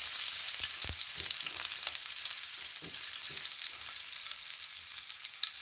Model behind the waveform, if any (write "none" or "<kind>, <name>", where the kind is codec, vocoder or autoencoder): none